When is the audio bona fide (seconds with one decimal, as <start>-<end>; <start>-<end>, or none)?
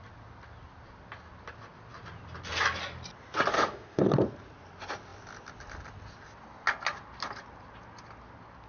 0.0-3.5; 4.0-8.7